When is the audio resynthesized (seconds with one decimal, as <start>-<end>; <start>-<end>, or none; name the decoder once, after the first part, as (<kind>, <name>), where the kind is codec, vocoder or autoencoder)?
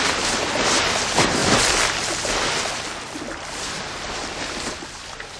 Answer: none